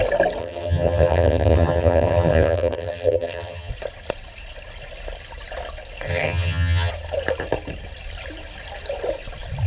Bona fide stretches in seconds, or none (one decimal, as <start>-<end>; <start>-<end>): 0.0-0.4; 3.7-6.1; 6.9-9.7